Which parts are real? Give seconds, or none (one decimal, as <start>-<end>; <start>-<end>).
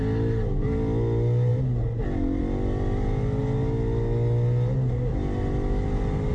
0.0-6.3